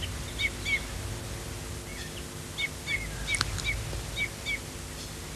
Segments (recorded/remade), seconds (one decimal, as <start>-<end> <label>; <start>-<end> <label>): 0.0-5.4 recorded